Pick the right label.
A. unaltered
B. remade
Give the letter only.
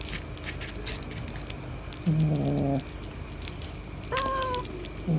A